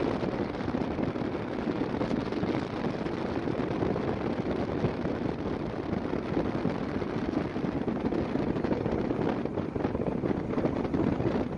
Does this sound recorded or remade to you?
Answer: recorded